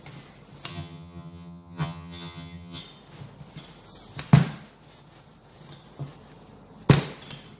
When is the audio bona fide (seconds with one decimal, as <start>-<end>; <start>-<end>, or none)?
0.0-0.7; 2.8-7.6

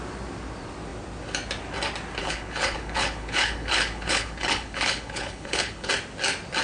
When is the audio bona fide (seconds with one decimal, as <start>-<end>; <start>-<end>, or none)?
0.0-2.2; 5.9-6.6

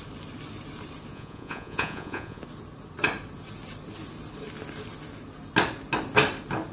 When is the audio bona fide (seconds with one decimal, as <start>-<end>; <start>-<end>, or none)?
0.0-1.1; 2.4-6.7

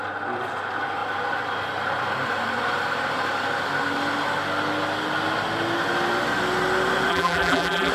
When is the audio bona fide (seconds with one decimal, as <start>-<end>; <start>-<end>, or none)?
0.0-7.1

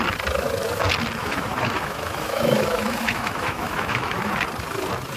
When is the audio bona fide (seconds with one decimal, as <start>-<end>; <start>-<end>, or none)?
0.0-1.2; 4.3-5.2